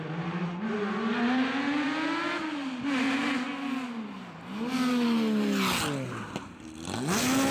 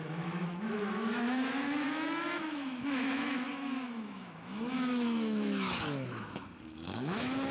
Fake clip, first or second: second